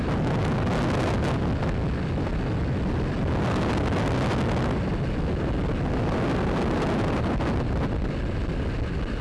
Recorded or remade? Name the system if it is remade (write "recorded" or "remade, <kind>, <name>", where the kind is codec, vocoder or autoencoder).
recorded